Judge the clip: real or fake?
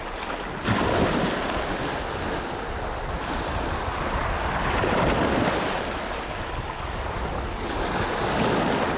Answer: real